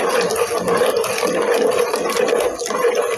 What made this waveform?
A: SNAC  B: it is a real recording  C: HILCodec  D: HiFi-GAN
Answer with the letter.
B